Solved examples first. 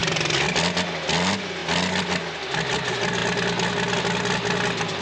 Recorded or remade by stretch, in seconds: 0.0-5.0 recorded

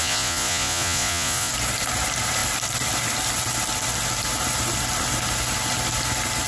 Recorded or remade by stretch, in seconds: 0.0-1.5 remade; 1.5-6.5 recorded